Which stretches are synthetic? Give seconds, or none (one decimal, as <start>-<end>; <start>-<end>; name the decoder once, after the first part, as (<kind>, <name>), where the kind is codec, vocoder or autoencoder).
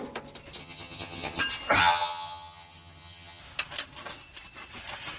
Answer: 0.6-1.4 (vocoder, HiFi-GAN); 1.8-3.4